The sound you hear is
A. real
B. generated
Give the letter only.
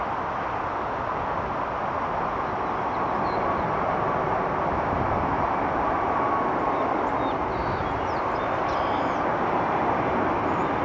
A